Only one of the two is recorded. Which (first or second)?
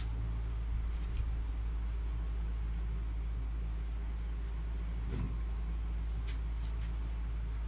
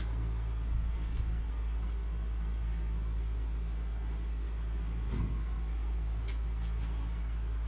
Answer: first